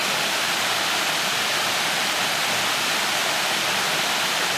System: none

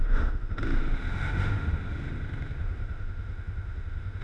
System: autoencoder, DAC-VAE